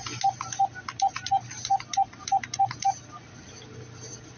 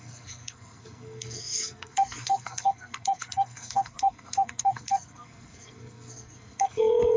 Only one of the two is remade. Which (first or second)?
second